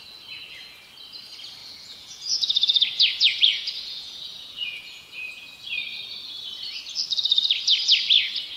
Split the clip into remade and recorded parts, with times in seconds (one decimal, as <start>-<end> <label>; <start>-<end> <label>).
0.0-1.6 recorded; 1.6-5.7 remade; 5.7-8.6 recorded